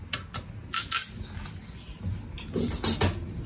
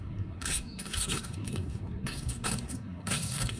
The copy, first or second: second